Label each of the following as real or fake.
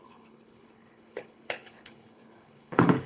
fake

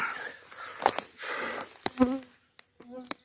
real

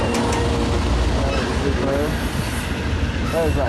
real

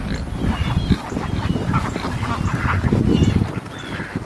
real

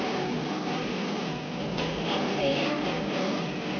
real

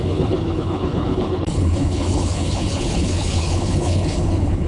fake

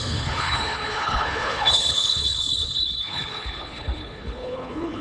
fake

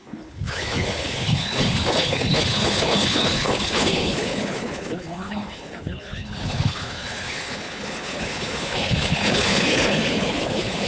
fake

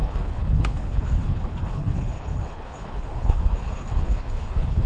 fake